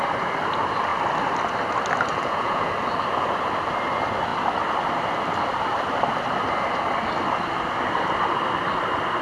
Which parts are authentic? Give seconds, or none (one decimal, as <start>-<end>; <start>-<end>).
0.0-2.1; 2.7-9.2